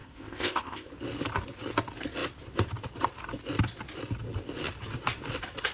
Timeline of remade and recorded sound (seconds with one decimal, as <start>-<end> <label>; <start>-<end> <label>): 0.0-0.9 remade; 0.9-5.7 recorded